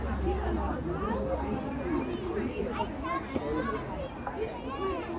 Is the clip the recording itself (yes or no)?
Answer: yes